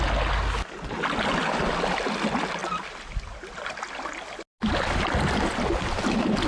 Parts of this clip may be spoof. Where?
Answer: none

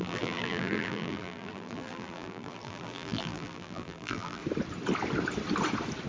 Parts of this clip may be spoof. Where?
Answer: 0.0-4.4 (vocoder, BigVGAN v2)

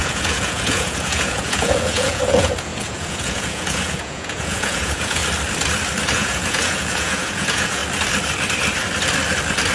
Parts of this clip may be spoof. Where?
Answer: 0.0-5.2 (vocoder, Vocos); 6.1-7.8

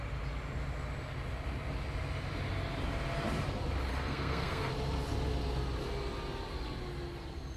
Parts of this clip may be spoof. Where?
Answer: 3.9-4.7 (codec, SNAC)

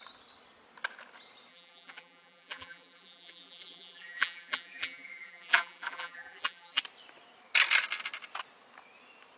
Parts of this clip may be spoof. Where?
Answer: 1.5-6.8 (vocoder, BigVGAN v2)

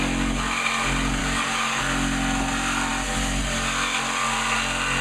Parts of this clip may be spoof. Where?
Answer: 1.2-1.8 (codec, DAC)

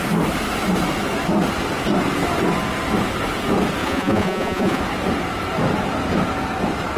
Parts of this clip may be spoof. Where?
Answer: 3.8-4.8 (vocoder, Vocos)